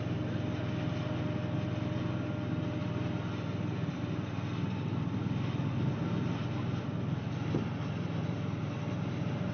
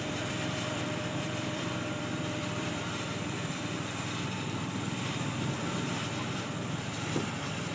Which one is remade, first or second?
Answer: second